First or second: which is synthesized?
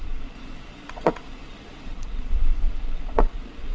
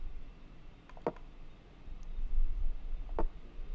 first